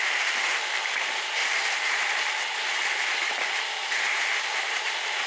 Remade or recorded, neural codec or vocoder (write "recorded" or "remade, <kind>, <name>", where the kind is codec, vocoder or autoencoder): recorded